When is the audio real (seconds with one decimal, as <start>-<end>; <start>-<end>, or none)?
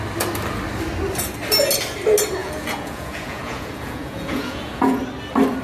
0.0-2.4; 5.0-5.6